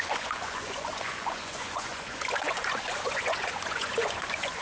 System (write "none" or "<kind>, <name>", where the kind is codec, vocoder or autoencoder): vocoder, Vocos